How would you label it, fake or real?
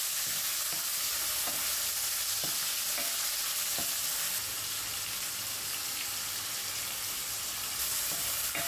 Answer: real